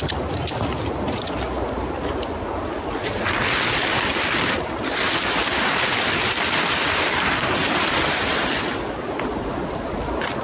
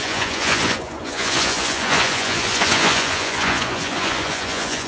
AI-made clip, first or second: second